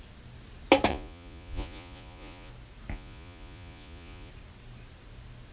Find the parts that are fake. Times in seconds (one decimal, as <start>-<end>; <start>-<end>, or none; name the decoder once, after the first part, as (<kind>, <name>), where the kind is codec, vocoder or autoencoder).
0.9-2.5 (vocoder, Vocos); 2.9-4.3